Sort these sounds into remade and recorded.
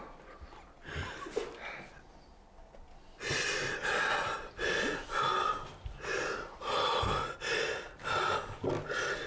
recorded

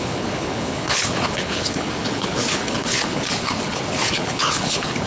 remade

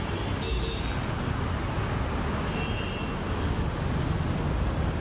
recorded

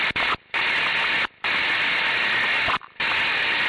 recorded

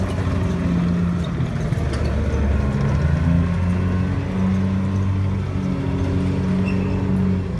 recorded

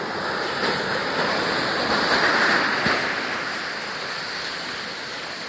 recorded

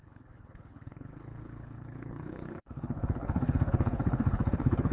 remade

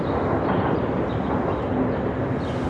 recorded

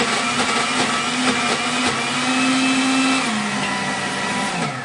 recorded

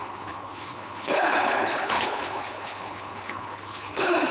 remade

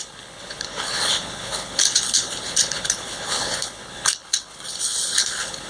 remade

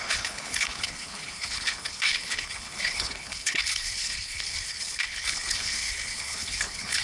remade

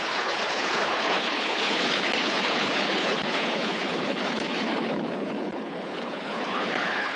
remade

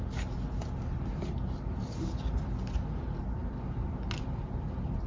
recorded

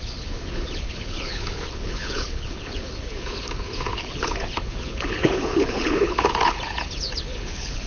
remade